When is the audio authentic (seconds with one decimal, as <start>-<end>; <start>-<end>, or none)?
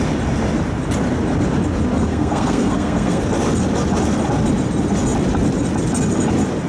0.0-2.1; 3.2-6.7